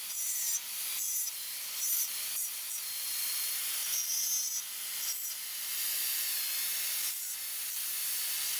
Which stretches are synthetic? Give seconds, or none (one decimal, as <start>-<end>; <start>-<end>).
none